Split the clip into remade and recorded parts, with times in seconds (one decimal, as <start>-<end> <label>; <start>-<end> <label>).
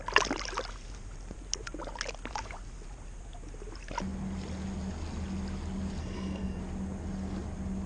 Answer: 0.0-6.0 recorded; 6.0-6.6 remade; 6.6-7.9 recorded